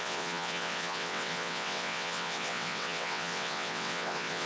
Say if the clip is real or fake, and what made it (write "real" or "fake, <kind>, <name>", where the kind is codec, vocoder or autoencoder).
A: fake, vocoder, WaveNeXt